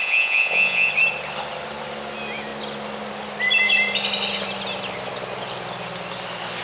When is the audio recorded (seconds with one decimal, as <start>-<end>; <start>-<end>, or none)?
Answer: 0.9-6.6

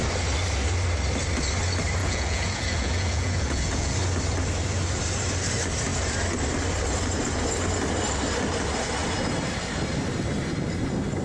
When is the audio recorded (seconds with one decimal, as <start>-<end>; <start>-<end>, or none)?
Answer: 0.0-2.0; 3.9-11.2

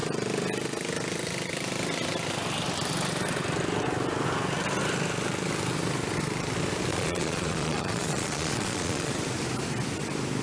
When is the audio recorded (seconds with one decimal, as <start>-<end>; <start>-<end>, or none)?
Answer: 0.0-6.9; 9.1-10.4

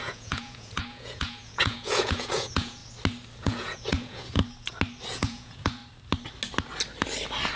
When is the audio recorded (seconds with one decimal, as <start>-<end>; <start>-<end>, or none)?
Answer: 2.8-3.4; 4.4-5.1; 5.8-7.6

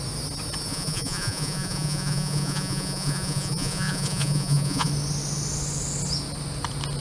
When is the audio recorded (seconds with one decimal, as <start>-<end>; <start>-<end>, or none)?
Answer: 0.0-0.7; 4.9-7.0

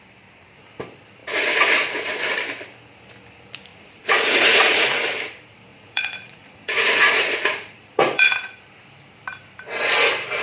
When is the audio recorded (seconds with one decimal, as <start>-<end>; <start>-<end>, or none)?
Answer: 0.0-1.2; 2.2-3.7; 4.9-5.7; 8.6-10.4

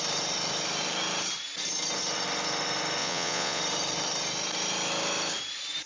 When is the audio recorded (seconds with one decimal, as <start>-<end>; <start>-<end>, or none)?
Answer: 0.0-3.0; 3.6-5.9

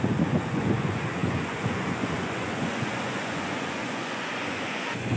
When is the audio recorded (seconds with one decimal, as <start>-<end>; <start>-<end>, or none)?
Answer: none